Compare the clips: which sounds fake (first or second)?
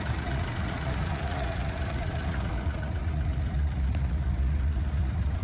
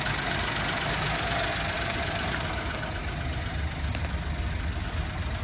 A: first